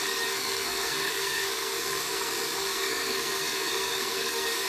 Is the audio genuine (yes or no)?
no